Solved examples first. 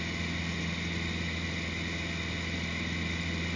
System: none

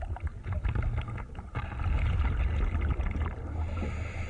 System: none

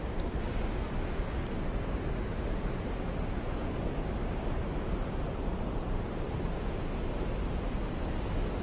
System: none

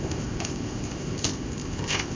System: codec, ZipCodec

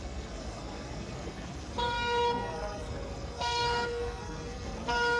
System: codec, SNAC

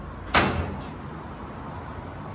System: none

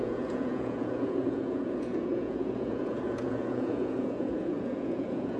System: vocoder, Vocos